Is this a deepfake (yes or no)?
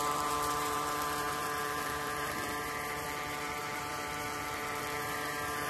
yes